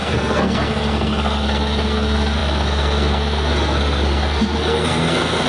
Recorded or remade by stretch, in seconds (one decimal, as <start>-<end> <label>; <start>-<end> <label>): 0.0-5.5 remade